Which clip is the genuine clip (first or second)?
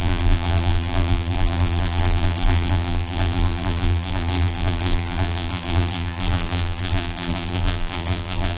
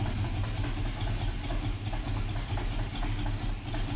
second